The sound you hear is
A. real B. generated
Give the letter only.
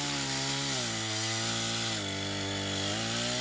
A